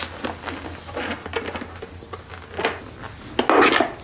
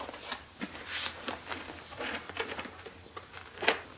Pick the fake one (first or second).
second